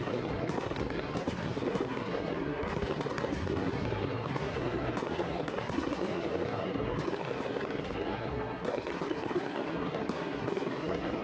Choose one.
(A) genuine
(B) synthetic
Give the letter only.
B